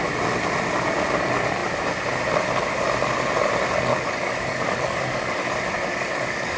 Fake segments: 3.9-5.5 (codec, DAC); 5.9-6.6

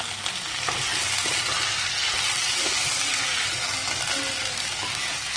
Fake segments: 4.5-5.4 (codec, DAC)

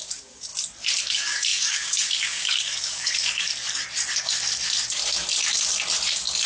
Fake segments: 0.0-0.5 (codec, DAC); 1.0-3.5

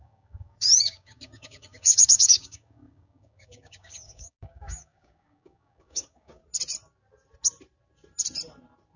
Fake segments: 0.0-6.4 (codec, DAC)

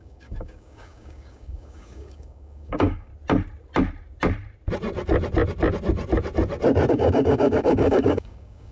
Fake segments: 0.0-3.1 (codec, DAC); 6.9-8.7

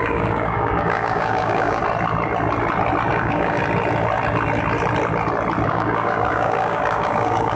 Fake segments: 0.0-1.8 (codec, DAC); 3.1-3.6; 5.7-7.6

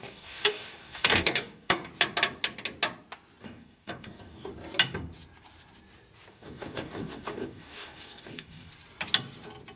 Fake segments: 0.0-1.9 (codec, DAC); 3.4-4.5; 6.3-8.7